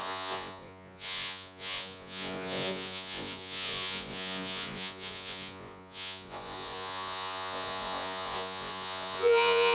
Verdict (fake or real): fake